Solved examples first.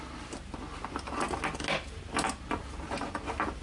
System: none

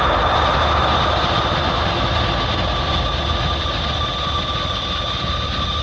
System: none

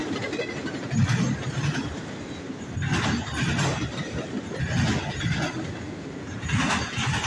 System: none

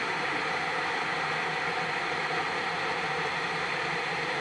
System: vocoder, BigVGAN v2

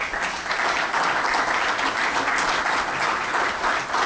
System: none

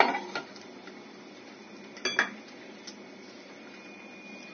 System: none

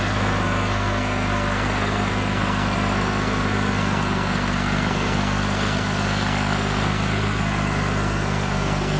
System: codec, SNAC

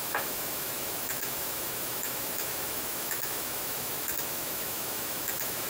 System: autoencoder, DAC-VAE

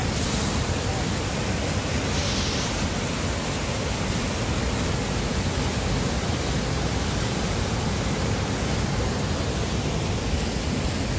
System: none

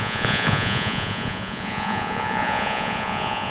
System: vocoder, Vocos